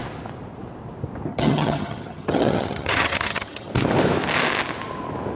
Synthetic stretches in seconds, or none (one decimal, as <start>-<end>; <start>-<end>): 1.3-3.7